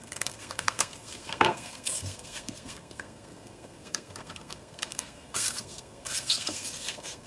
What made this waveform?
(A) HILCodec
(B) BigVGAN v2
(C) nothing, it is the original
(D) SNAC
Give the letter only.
D